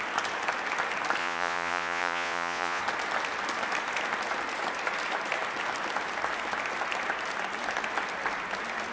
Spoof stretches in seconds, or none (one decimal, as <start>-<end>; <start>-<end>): 1.2-2.8

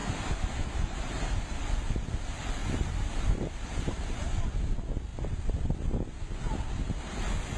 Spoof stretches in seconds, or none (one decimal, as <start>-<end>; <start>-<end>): 0.0-1.6; 2.6-4.5

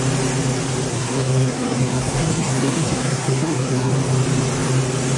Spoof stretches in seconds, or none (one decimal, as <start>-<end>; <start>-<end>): 0.9-3.9